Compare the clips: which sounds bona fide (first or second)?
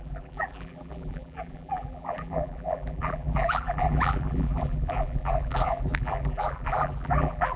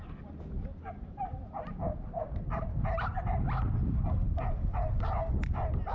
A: second